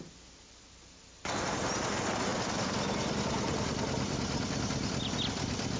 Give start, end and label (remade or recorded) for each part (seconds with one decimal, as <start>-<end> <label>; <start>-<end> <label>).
0.0-5.8 recorded